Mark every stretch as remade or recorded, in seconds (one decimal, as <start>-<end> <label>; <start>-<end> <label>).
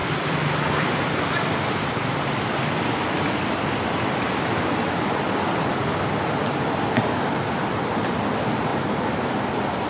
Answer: 0.0-2.7 remade; 2.7-9.9 recorded